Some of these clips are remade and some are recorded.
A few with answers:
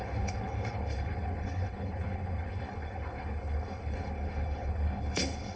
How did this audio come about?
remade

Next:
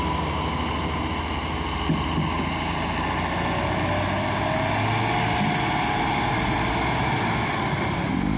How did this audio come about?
recorded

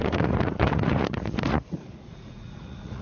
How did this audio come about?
remade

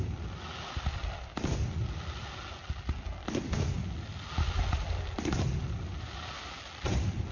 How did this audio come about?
recorded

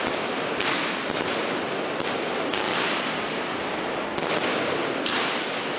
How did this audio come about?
recorded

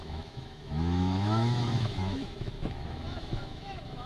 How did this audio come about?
remade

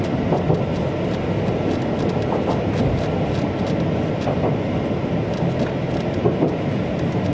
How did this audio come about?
recorded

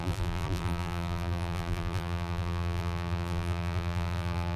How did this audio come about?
remade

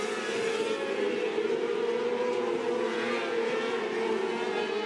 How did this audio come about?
recorded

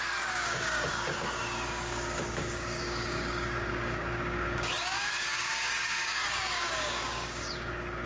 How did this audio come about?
remade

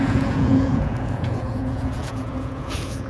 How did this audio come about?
remade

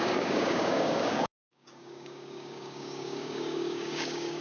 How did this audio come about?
remade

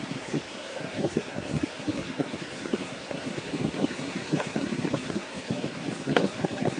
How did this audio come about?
remade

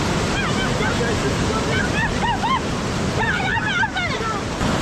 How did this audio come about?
remade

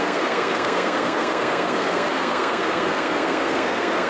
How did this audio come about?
remade